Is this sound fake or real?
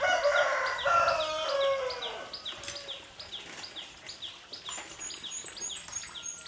real